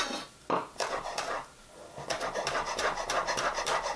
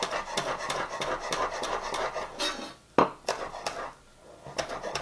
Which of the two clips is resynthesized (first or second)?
first